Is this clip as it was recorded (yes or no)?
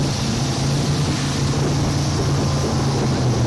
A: yes